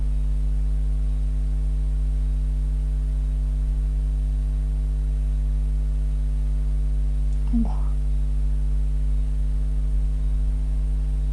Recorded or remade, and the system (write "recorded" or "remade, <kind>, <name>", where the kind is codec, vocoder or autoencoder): recorded